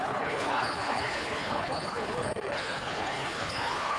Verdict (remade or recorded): remade